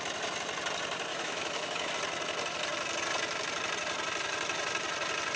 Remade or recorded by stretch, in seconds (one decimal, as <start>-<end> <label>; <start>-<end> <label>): 0.0-1.1 recorded; 1.1-1.9 remade; 1.9-5.4 recorded